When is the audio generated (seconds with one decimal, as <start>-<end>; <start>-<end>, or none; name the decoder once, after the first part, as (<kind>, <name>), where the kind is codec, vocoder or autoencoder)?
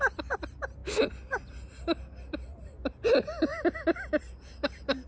none